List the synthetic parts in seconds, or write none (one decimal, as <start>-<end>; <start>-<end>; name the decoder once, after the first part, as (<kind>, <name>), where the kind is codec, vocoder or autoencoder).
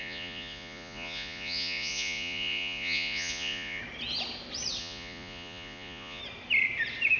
0.0-3.8 (vocoder, Vocos); 4.8-6.2